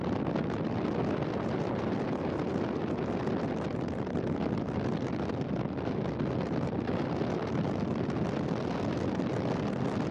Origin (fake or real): real